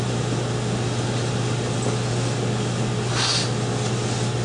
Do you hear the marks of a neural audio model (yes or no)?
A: no